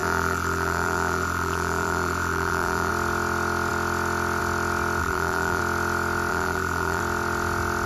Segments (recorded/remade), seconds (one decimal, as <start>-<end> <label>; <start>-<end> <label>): 0.0-2.9 remade; 2.9-5.0 recorded; 5.0-5.6 remade; 5.6-6.3 recorded; 6.3-7.0 remade; 7.0-7.9 recorded